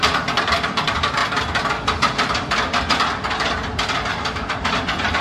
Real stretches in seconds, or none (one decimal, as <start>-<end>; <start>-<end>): 1.2-4.1